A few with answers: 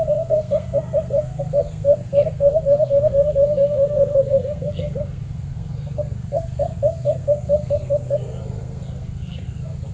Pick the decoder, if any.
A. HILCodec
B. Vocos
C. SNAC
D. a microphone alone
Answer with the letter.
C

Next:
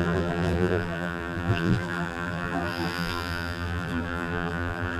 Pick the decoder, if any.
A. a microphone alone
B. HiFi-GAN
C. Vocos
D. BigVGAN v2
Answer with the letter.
D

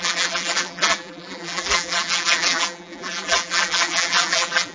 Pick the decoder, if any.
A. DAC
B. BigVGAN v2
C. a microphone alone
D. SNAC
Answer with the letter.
B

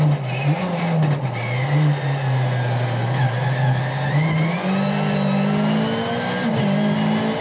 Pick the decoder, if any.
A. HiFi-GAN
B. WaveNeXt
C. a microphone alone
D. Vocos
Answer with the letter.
C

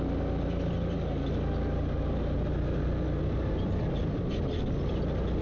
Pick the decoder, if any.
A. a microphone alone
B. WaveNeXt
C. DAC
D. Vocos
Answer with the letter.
A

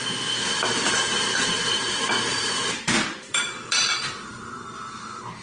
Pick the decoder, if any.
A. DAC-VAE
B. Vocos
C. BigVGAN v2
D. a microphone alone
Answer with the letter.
C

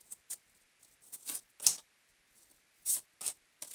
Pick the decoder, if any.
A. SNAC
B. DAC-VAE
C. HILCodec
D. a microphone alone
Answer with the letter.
D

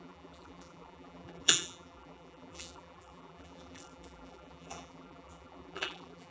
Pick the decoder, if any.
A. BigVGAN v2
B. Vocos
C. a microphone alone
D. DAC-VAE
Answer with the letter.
A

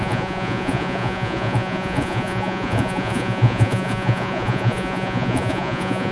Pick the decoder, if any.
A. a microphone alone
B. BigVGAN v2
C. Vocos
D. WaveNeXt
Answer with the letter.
C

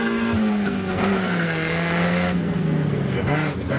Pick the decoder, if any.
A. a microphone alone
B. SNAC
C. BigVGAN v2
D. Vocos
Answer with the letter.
B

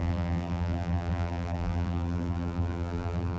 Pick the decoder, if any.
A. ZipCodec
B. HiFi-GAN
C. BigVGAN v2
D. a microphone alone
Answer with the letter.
C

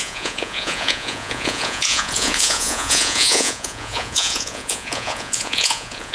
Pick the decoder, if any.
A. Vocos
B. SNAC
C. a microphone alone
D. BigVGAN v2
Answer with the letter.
A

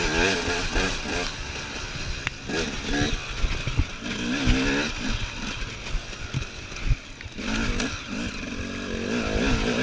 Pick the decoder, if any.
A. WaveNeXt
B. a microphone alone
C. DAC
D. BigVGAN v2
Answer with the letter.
B